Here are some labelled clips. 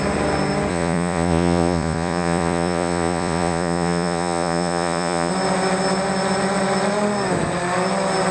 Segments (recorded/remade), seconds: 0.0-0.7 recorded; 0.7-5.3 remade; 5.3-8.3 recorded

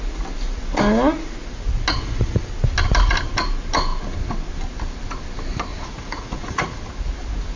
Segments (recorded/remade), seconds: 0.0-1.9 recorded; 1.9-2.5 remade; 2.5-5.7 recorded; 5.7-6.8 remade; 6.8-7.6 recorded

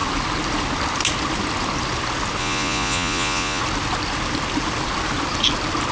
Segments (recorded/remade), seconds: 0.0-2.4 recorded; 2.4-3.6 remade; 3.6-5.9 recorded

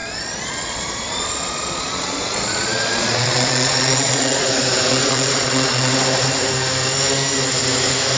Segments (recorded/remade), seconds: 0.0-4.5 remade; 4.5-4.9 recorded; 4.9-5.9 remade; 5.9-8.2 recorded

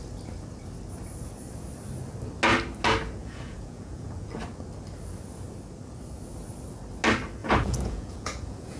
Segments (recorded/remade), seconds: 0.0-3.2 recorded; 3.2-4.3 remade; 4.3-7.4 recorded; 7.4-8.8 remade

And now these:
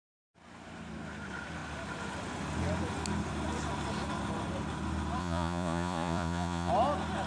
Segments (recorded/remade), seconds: 0.0-5.2 recorded; 5.2-6.7 remade; 6.7-7.3 recorded

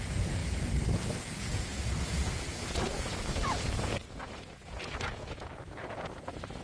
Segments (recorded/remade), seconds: 0.0-0.4 remade; 0.4-1.2 recorded; 1.2-6.6 remade

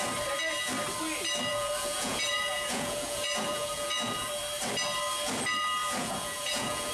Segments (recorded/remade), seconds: 0.0-1.5 recorded; 1.5-4.3 remade; 4.3-5.8 recorded; 5.8-6.9 remade